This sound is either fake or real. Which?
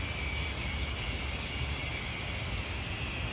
real